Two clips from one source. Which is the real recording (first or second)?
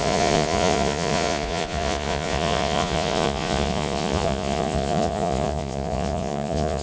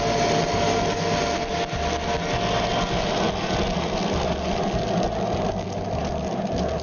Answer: second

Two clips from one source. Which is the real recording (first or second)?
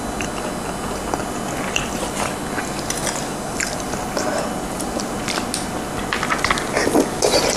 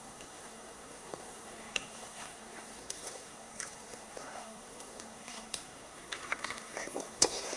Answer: first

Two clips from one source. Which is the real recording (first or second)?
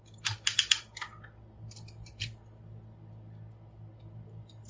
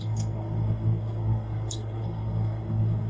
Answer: first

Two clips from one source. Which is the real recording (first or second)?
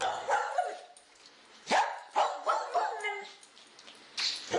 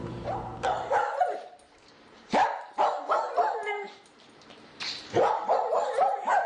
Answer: first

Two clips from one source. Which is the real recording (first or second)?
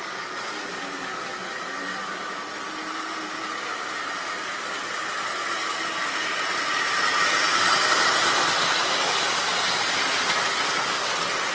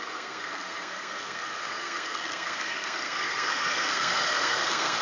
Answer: first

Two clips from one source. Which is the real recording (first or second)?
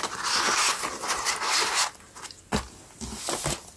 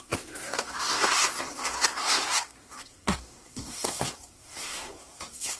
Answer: first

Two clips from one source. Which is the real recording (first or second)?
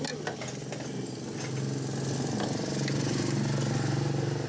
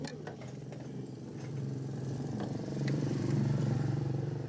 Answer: first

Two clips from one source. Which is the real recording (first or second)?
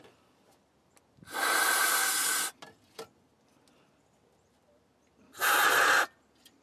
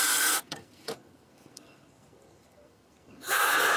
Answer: first